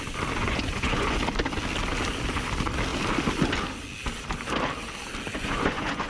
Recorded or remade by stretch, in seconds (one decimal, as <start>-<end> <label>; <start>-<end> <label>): 0.0-0.4 recorded; 0.4-1.2 remade; 1.2-5.3 recorded; 5.3-6.1 remade